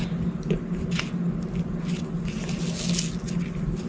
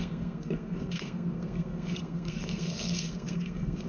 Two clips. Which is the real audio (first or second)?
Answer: first